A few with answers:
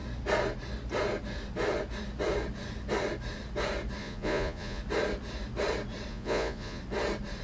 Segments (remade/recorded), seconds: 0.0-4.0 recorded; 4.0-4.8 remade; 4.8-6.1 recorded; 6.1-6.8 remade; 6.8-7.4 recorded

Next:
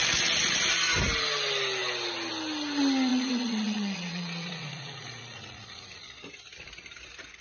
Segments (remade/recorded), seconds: 0.0-3.1 recorded; 3.1-6.3 remade; 6.3-7.4 recorded

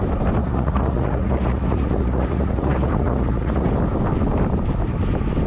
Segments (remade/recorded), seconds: 0.0-0.4 recorded; 0.4-3.7 remade; 3.7-5.5 recorded

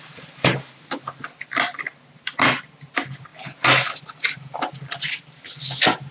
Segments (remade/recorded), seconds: 0.0-6.1 recorded

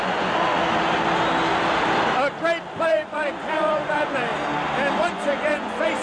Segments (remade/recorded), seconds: 0.0-0.6 remade; 0.6-2.8 recorded; 2.8-4.3 remade; 4.3-5.0 recorded; 5.0-6.0 remade

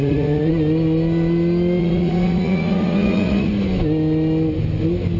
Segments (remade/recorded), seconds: 0.0-0.5 remade; 0.5-1.8 recorded; 1.8-3.5 remade; 3.5-5.2 recorded

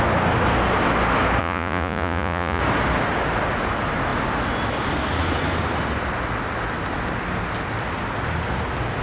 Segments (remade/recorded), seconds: 0.0-1.4 recorded; 1.4-2.6 remade; 2.6-9.0 recorded

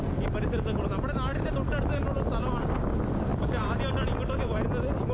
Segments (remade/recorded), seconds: 0.0-5.1 recorded